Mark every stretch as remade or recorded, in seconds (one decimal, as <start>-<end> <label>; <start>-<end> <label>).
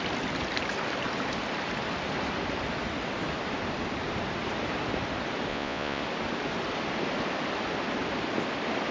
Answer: 0.0-5.5 recorded; 5.5-6.0 remade; 6.0-8.9 recorded